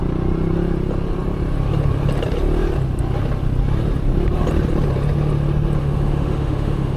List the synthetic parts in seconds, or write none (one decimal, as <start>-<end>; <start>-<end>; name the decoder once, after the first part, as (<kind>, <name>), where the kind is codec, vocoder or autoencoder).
5.8-7.0 (autoencoder, DAC-VAE)